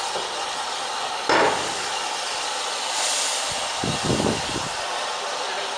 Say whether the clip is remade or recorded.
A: recorded